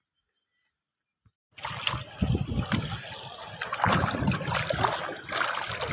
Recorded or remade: recorded